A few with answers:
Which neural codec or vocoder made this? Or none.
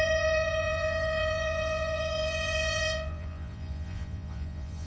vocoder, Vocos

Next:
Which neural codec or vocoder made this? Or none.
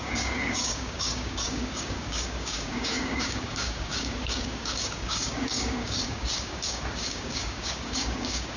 codec, DAC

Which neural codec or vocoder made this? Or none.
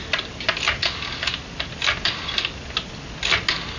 none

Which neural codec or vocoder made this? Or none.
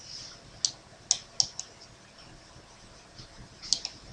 none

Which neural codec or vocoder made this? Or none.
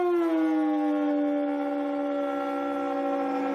none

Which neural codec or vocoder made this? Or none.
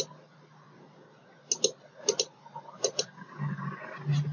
none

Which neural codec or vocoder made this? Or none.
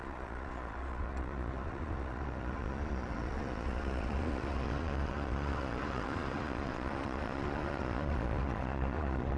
vocoder, Vocos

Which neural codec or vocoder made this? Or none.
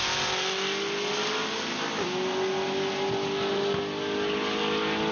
none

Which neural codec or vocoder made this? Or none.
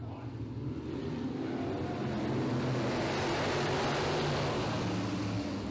none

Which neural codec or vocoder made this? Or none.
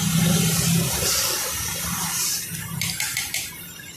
none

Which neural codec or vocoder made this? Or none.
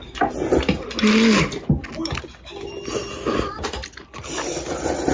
none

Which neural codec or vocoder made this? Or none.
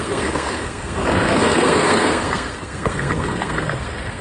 codec, SNAC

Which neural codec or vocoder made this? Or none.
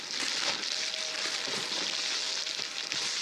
none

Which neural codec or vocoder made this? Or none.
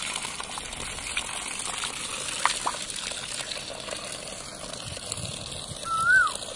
none